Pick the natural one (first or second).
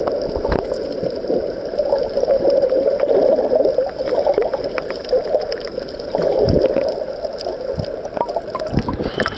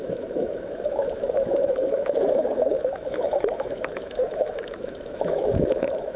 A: first